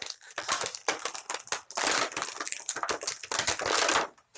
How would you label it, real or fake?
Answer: real